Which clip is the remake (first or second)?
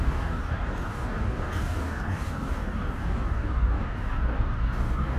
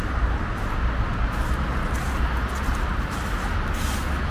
first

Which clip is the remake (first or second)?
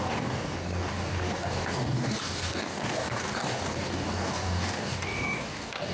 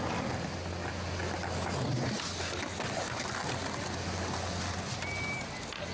first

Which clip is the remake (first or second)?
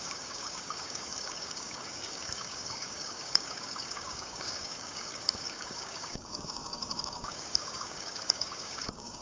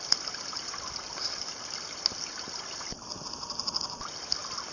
first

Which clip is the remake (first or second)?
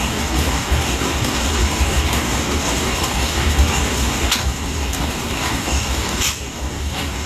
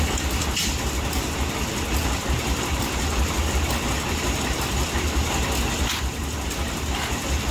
first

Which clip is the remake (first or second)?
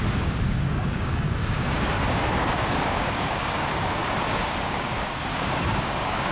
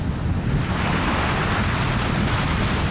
first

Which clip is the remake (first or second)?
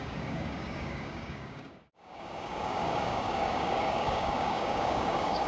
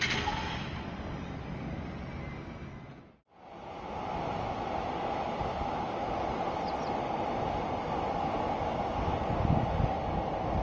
first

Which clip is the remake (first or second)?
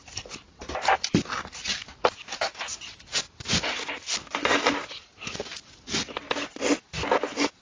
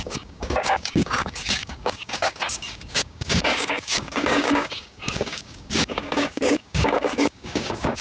second